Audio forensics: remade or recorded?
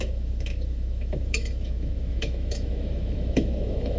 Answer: remade